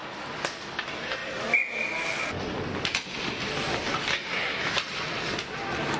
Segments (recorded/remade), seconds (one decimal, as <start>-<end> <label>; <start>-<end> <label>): 0.0-4.1 recorded; 4.1-4.6 remade; 4.6-6.0 recorded